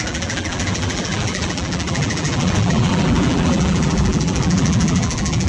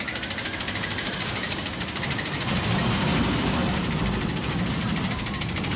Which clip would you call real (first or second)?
second